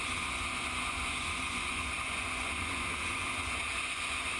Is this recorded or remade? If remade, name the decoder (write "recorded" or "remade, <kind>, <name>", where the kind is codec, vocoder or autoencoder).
remade, vocoder, Vocos